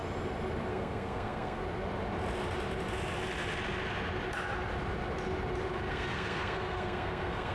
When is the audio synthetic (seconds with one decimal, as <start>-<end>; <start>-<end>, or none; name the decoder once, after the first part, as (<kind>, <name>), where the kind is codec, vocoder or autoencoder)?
0.7-1.6 (codec, SNAC); 5.9-7.5